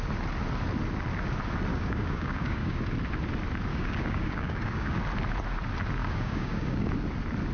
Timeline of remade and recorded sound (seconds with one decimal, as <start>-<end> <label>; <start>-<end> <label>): 0.0-1.7 recorded; 1.7-2.8 remade; 2.8-3.7 recorded; 3.7-5.0 remade; 5.0-6.0 recorded; 6.0-6.9 remade; 6.9-7.5 recorded